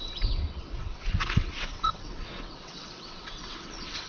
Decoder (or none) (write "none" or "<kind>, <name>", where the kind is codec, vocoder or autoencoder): vocoder, WaveNeXt